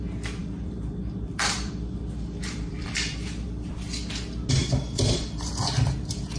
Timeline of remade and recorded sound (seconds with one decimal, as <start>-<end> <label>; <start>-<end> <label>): 0.0-0.4 recorded; 0.4-3.7 remade; 3.7-4.6 recorded; 4.6-5.4 remade; 5.4-6.4 recorded